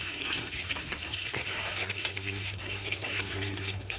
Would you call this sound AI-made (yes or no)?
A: yes